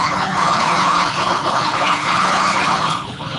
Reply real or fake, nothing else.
fake